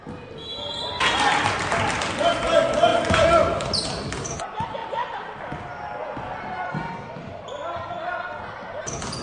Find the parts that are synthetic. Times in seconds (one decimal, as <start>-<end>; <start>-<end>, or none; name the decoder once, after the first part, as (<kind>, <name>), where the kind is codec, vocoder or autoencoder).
none

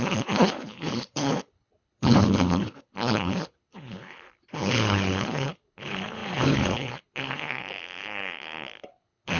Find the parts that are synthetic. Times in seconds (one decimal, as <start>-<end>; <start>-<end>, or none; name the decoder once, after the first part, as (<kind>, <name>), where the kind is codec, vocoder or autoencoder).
0.0-9.4 (codec, HILCodec)

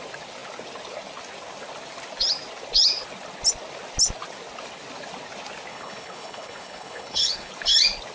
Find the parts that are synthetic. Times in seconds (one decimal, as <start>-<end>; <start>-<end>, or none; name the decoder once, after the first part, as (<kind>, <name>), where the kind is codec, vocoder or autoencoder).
5.7-7.5 (codec, HILCodec)

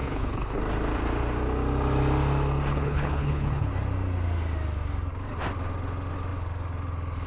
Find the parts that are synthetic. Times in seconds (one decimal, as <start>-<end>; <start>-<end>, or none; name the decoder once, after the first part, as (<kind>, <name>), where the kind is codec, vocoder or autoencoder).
0.0-0.6 (codec, HILCodec); 2.7-3.7

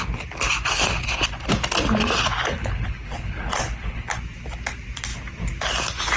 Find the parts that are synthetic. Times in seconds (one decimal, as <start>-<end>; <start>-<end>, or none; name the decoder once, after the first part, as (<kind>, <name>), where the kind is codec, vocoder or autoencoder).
2.6-4.2 (codec, HILCodec)

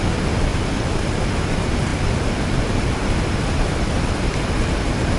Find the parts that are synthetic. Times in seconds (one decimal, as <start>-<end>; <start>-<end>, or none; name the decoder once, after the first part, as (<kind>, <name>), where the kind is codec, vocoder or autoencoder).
none

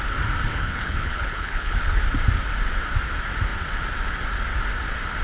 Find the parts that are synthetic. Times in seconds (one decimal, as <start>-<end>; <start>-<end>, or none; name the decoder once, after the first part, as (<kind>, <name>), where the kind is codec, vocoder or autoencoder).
0.5-2.0 (codec, HILCodec)